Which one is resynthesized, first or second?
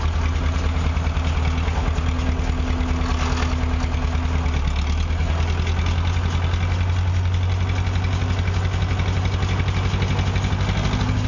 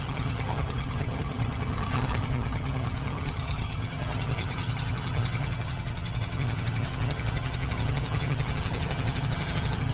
second